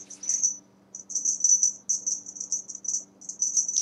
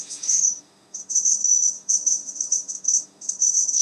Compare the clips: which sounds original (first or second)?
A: first